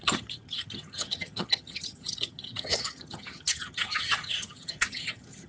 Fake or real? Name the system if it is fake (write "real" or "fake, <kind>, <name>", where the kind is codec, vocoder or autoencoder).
fake, vocoder, HiFi-GAN